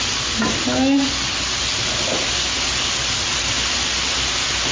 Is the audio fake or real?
real